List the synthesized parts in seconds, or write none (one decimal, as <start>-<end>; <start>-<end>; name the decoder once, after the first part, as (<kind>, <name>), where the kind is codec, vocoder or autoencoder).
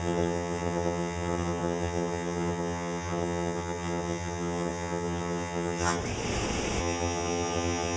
0.0-6.0 (vocoder, HiFi-GAN); 6.8-8.0